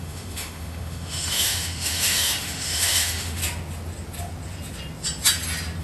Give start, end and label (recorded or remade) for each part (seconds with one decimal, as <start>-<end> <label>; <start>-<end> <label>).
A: 0.0-3.4 remade; 3.4-5.8 recorded